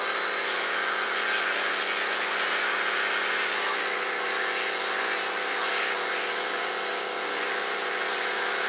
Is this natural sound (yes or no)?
no